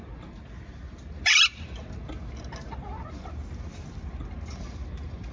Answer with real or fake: real